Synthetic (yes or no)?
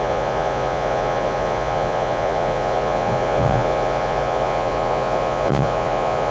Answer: yes